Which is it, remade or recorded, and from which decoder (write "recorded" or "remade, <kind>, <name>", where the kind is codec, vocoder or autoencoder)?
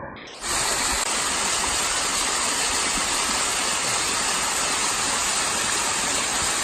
recorded